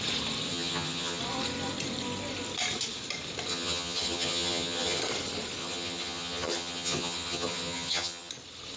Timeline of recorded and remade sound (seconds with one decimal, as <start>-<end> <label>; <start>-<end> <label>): 0.0-0.5 recorded; 0.5-1.2 remade; 1.2-3.5 recorded; 3.5-5.0 remade; 5.0-5.6 recorded; 5.6-8.3 remade; 8.3-8.8 recorded

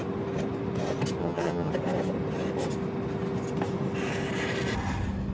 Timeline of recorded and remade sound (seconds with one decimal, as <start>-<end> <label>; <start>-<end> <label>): 0.0-1.2 recorded; 1.2-1.7 remade; 1.7-5.3 recorded

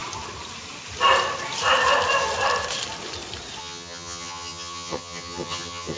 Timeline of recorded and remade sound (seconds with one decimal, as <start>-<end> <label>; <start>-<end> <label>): 0.0-3.6 recorded; 3.6-6.0 remade

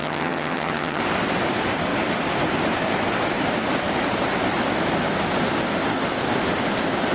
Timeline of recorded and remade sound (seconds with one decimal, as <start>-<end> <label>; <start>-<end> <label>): 0.0-1.0 remade; 1.0-7.1 recorded

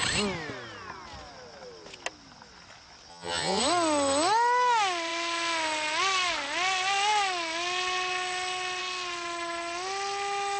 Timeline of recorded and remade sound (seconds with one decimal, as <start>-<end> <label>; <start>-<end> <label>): 0.0-3.1 recorded; 3.1-3.6 remade; 3.6-10.6 recorded

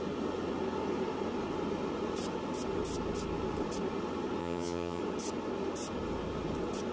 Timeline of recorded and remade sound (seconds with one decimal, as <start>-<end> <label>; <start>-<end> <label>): 0.0-4.4 recorded; 4.4-5.0 remade; 5.0-6.9 recorded

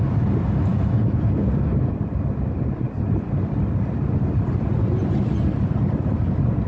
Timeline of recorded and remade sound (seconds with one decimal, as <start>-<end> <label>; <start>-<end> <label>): 0.0-6.7 recorded

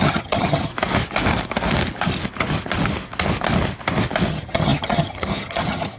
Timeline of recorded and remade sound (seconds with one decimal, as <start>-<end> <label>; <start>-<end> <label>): 0.0-0.7 remade; 0.7-4.3 recorded; 4.3-6.0 remade